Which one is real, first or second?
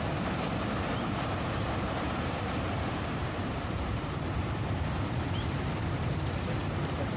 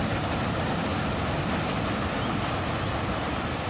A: second